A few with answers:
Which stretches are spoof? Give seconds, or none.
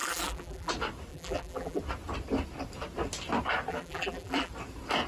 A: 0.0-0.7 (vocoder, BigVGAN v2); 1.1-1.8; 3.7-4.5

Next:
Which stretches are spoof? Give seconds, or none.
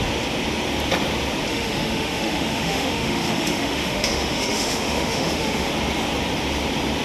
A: 1.5-5.7 (autoencoder, DAC-VAE)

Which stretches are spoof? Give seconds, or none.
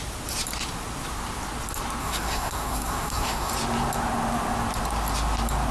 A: 2.0-3.5 (codec, SNAC)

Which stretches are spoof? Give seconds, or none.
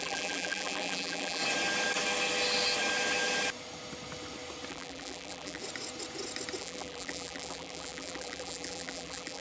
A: 0.0-1.4 (vocoder, BigVGAN v2); 4.7-5.6; 6.6-9.4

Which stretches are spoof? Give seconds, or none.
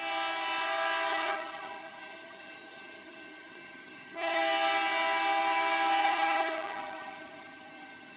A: 1.1-4.4 (vocoder, HiFi-GAN); 6.0-8.2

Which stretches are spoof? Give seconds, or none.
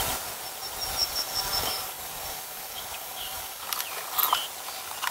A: 1.0-3.7 (codec, DAC)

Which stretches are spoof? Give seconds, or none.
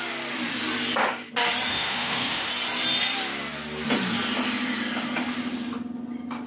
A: 1.7-2.5 (autoencoder, DAC-VAE)